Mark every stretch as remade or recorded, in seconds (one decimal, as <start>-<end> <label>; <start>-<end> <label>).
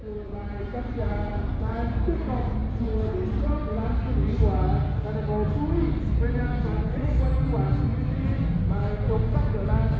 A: 0.0-10.0 recorded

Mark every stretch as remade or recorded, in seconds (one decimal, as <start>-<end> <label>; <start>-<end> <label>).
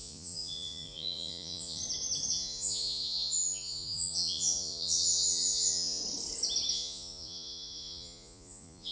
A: 0.0-1.8 remade; 1.8-2.3 recorded; 2.3-6.0 remade; 6.0-6.7 recorded; 6.7-8.9 remade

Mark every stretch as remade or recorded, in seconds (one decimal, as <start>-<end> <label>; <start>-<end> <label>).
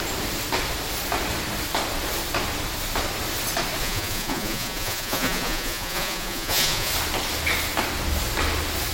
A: 0.0-3.8 recorded; 3.8-6.9 remade; 6.9-8.9 recorded